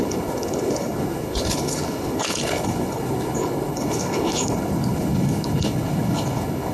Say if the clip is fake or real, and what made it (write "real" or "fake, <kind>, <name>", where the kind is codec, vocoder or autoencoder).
fake, codec, HILCodec